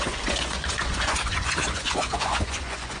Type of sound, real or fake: fake